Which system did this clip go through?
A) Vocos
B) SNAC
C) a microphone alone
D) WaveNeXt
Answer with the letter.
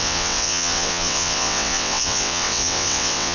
D